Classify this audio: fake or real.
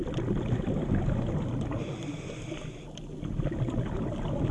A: real